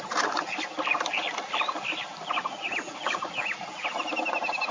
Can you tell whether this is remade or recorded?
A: recorded